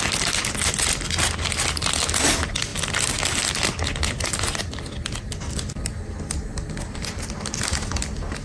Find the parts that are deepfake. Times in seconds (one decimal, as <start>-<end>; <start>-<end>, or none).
none